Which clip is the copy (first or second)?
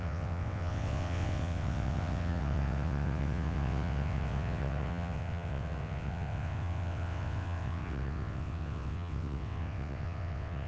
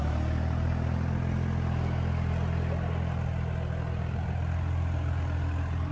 first